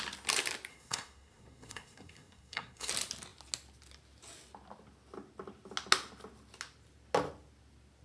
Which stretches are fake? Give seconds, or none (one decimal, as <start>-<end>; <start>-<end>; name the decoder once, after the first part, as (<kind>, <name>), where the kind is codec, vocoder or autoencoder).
0.7-2.9 (codec, SNAC)